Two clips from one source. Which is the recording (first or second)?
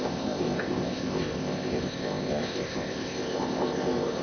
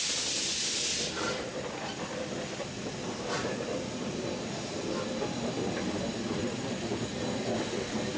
second